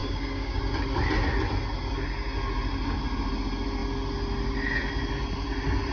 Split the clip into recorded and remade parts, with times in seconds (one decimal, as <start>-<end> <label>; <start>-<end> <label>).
0.0-0.6 remade; 0.6-5.9 recorded